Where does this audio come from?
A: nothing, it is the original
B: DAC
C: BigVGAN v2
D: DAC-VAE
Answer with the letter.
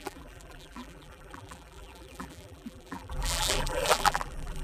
C